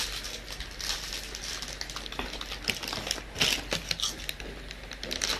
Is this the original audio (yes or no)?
yes